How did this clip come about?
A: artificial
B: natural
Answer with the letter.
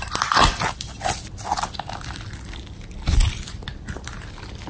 B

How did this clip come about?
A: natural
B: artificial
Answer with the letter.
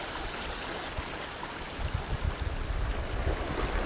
A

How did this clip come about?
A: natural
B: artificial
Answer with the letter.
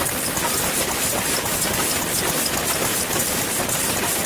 A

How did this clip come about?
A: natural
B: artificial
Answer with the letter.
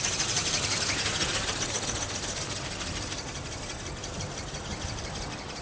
A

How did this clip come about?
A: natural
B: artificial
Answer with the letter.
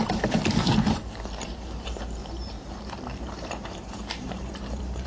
B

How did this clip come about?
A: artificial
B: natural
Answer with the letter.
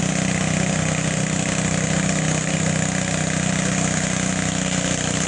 B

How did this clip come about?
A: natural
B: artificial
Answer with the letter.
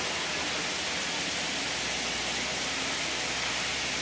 A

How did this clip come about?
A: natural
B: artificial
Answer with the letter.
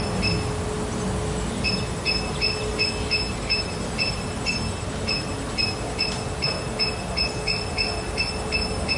A